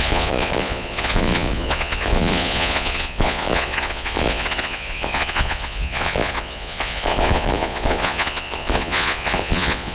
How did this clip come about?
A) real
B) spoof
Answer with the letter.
B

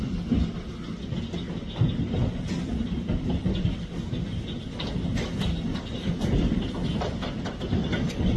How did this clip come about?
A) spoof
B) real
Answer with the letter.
B